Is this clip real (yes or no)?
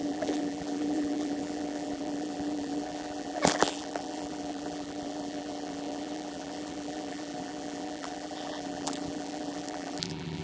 no